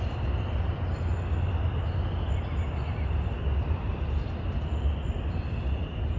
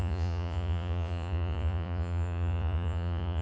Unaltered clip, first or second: first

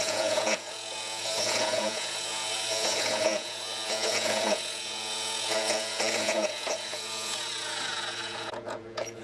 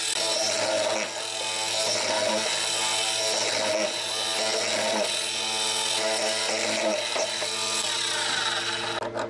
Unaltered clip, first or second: second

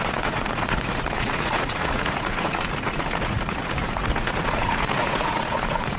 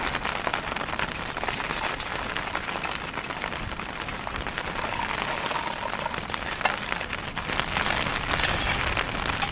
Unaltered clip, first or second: second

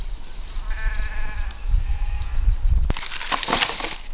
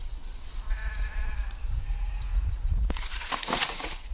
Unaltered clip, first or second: first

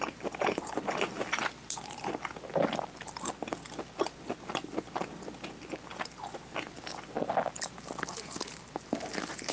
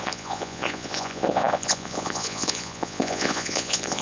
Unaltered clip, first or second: first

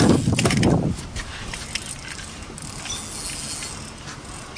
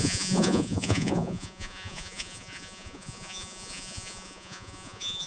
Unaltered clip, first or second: first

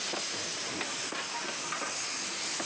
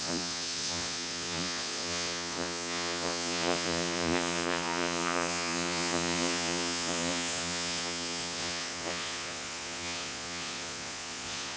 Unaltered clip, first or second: first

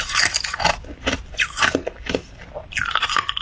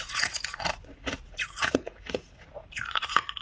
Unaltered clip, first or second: first